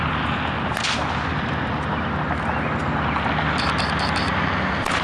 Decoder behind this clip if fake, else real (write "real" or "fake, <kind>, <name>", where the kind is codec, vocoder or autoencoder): real